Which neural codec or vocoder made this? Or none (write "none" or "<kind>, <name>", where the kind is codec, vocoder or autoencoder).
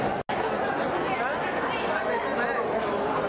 none